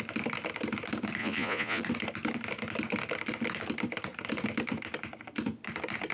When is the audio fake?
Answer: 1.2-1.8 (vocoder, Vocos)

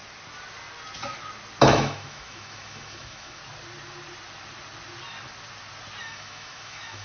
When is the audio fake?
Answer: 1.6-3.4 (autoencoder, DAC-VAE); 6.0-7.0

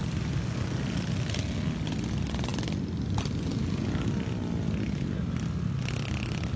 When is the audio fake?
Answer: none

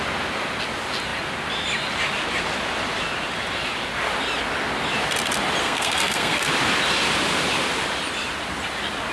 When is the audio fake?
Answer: 5.6-6.5 (codec, SNAC)